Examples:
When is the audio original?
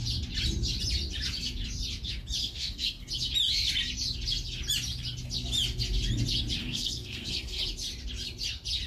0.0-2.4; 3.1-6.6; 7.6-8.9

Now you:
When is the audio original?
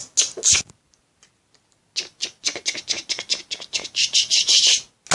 0.0-5.1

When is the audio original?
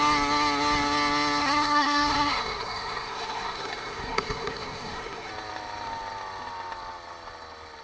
0.0-1.4; 5.3-7.8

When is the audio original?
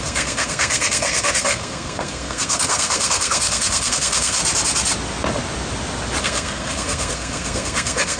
4.4-6.2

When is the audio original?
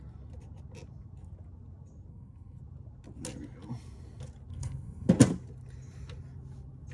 0.0-2.1; 2.6-4.5; 5.1-6.9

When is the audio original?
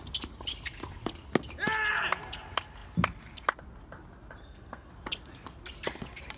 0.0-4.4; 4.9-6.4